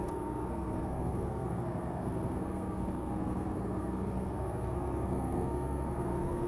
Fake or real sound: fake